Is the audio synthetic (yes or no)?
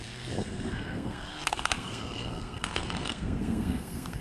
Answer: yes